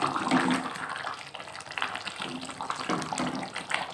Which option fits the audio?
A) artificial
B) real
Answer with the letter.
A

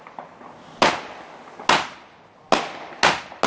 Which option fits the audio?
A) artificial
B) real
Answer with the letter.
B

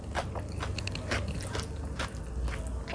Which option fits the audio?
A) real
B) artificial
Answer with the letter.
A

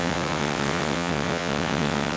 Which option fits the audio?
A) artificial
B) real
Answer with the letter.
A